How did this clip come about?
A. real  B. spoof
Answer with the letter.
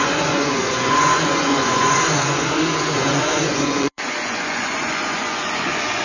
B